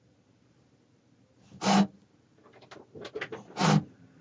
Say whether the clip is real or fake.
real